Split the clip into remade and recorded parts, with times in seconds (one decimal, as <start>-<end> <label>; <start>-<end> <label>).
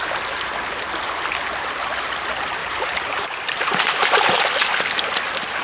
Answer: 0.0-2.6 recorded; 2.6-4.1 remade; 4.1-5.6 recorded